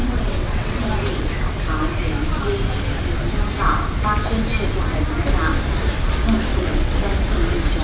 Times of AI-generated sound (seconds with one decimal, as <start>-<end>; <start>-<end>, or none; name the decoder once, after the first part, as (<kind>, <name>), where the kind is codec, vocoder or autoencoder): 0.0-0.8 (vocoder, WaveNeXt); 6.5-7.0